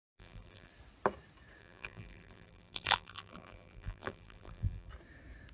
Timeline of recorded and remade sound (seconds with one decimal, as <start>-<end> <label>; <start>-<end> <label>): 0.0-0.7 remade; 0.7-1.6 recorded; 1.6-4.9 remade; 4.9-5.5 recorded